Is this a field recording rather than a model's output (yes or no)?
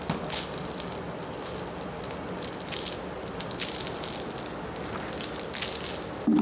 yes